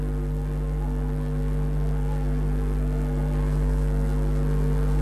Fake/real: fake